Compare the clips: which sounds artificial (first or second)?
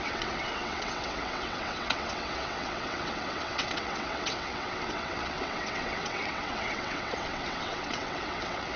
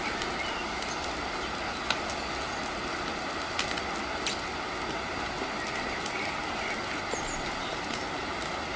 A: first